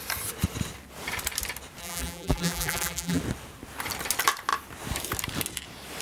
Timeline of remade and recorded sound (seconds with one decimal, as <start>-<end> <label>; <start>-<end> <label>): 0.0-1.8 recorded; 1.8-3.2 remade; 3.2-6.0 recorded